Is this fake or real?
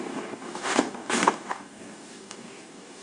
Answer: fake